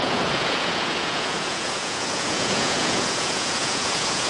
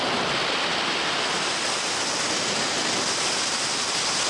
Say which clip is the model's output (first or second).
first